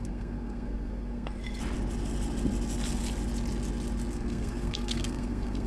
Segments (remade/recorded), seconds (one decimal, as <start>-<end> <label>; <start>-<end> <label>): 0.0-1.4 remade; 1.4-4.1 recorded; 4.1-5.7 remade

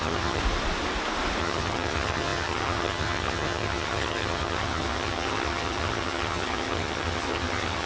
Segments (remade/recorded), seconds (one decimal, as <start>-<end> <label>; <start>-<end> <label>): 0.0-0.4 remade; 0.4-1.4 recorded; 1.4-7.9 remade

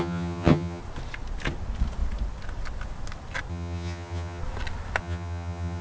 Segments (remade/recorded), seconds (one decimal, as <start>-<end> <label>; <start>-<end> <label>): 0.0-0.8 remade; 0.8-3.5 recorded; 3.5-4.4 remade; 4.4-5.0 recorded; 5.0-5.8 remade

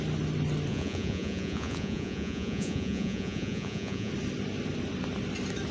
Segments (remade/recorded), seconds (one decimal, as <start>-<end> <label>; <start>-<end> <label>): 0.0-0.7 recorded; 0.7-4.1 remade; 4.1-5.7 recorded

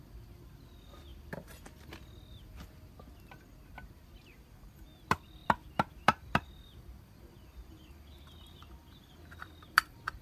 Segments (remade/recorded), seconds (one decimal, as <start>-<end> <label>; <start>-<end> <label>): 0.0-5.4 recorded; 5.4-7.2 remade; 7.2-8.8 recorded; 8.8-10.2 remade